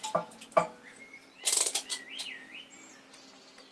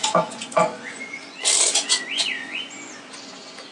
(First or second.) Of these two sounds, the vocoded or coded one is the second